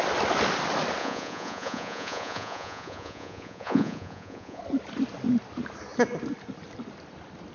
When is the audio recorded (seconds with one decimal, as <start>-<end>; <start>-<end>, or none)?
0.0-1.0; 4.6-7.5